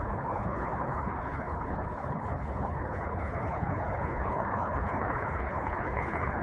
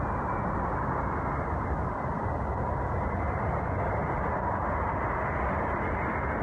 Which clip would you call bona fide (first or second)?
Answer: second